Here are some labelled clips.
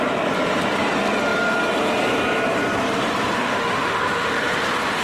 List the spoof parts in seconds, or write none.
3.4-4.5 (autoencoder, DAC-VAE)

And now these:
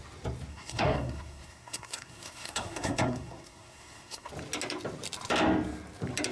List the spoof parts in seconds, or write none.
0.5-4.3 (codec, SNAC)

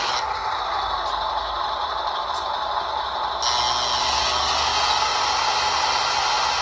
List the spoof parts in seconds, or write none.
none